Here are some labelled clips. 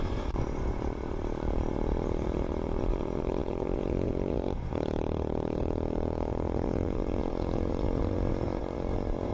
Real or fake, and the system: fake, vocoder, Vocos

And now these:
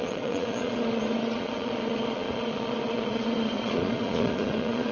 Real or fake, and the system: fake, vocoder, Vocos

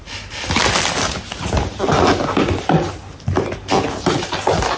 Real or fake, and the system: real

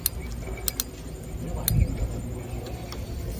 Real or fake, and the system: real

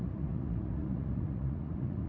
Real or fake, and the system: fake, vocoder, Vocos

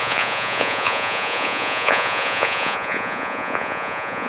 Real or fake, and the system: fake, vocoder, Vocos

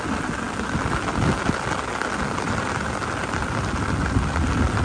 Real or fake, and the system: real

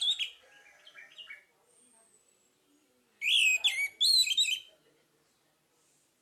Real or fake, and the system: real